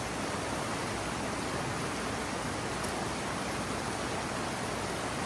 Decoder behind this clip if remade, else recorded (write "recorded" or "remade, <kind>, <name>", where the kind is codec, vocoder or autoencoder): recorded